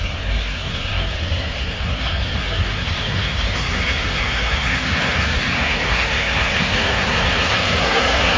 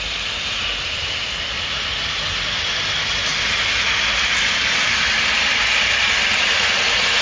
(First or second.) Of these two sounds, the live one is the second